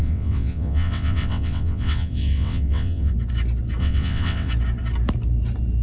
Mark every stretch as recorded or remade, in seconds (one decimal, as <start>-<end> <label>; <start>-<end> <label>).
0.0-3.1 remade; 3.1-3.8 recorded; 3.8-4.5 remade; 4.5-5.8 recorded